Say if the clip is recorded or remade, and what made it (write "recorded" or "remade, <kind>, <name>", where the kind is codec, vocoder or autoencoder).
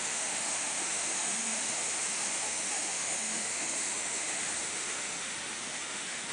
remade, autoencoder, DAC-VAE